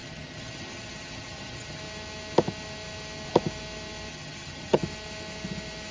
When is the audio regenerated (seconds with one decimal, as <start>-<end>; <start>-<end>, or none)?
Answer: 0.0-1.8; 4.1-4.8